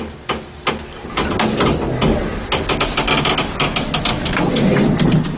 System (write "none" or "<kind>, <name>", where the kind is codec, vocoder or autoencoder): none